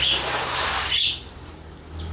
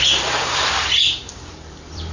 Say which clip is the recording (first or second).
first